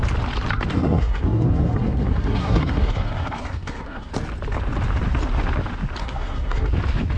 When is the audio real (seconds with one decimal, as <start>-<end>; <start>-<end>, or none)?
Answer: 0.0-0.7; 4.1-6.0; 6.7-7.2